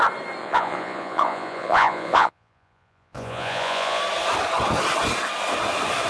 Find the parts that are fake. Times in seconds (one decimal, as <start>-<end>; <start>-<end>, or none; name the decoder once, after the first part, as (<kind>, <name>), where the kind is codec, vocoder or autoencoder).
0.4-4.0 (vocoder, Vocos)